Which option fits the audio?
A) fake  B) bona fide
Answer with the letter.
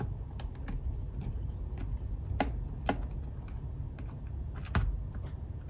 B